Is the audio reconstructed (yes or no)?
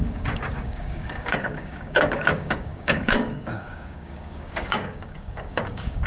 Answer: yes